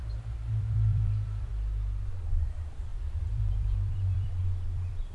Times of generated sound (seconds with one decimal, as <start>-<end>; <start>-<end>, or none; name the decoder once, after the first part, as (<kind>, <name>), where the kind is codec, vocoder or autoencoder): 0.5-1.5 (vocoder, BigVGAN v2); 2.4-5.1